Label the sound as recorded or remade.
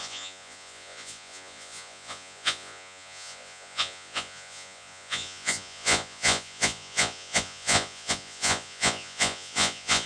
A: remade